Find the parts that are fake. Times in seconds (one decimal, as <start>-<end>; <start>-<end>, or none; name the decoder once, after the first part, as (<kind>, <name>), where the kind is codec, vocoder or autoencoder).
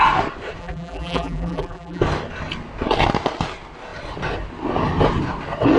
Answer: 0.6-2.0 (vocoder, BigVGAN v2)